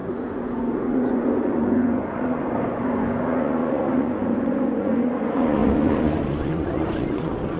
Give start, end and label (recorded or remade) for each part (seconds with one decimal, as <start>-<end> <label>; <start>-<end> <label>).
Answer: 0.0-7.6 remade

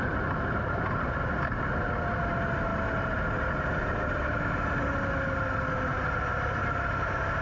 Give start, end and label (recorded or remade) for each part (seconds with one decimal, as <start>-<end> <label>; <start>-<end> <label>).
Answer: 0.0-7.4 recorded

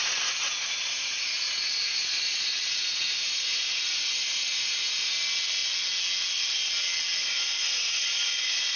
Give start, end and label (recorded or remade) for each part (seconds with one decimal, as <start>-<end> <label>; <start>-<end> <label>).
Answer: 0.0-5.1 remade; 5.1-7.2 recorded; 7.2-8.8 remade